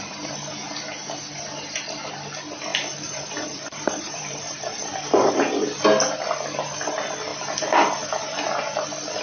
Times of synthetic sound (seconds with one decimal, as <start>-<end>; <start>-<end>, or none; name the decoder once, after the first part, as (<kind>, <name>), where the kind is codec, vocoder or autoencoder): 2.7-5.3 (vocoder, BigVGAN v2)